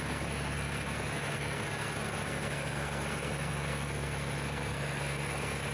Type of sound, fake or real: fake